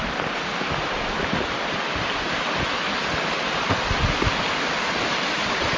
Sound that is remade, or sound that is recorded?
recorded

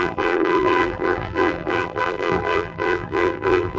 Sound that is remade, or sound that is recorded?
remade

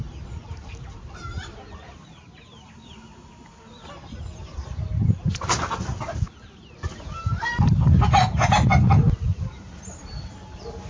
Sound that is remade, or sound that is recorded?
recorded